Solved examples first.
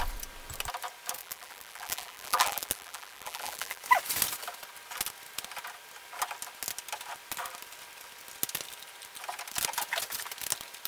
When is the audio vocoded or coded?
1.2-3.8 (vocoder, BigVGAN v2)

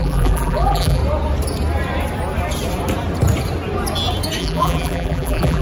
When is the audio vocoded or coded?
0.0-1.0 (vocoder, BigVGAN v2); 4.4-5.6

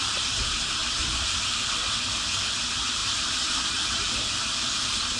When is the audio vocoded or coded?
0.0-3.0 (vocoder, BigVGAN v2); 3.6-5.2

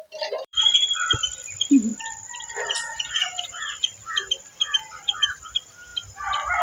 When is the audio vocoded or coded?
0.0-1.9 (vocoder, BigVGAN v2); 2.6-5.9

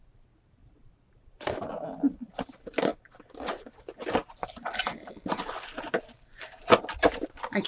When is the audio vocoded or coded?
0.6-1.6 (vocoder, BigVGAN v2)